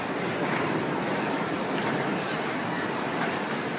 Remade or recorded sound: remade